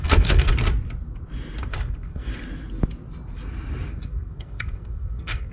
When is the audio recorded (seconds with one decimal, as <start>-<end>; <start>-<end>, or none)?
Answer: 0.5-1.7; 2.3-3.9